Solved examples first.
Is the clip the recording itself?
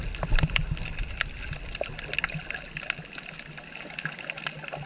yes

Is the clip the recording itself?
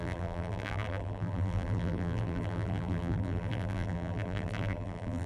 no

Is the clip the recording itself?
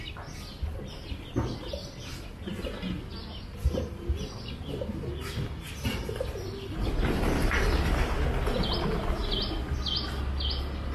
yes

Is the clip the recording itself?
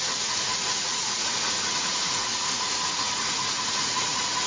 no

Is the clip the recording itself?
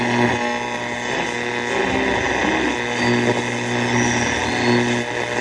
yes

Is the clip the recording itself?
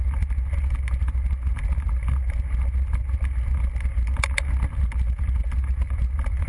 yes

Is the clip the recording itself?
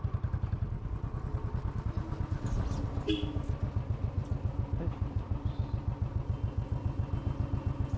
yes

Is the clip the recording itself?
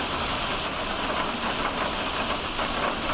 yes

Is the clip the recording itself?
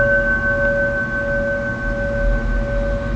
yes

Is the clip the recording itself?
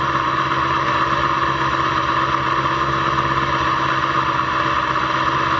yes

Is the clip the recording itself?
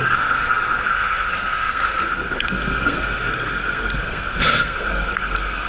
no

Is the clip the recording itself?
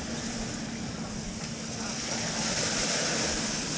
yes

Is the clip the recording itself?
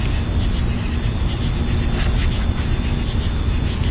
yes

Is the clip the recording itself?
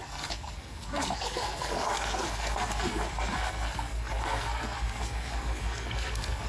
no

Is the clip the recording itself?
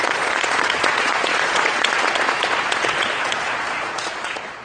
no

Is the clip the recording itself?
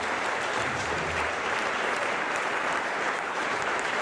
no